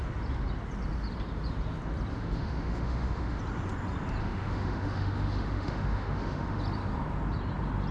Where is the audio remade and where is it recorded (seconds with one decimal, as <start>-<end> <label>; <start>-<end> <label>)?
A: 0.0-2.1 recorded; 2.1-3.4 remade; 3.4-4.2 recorded; 4.2-6.6 remade; 6.6-7.9 recorded